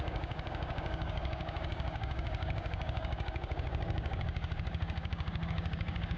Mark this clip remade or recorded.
remade